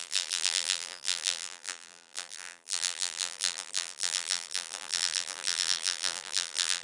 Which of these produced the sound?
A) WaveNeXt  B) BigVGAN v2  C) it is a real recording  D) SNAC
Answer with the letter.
B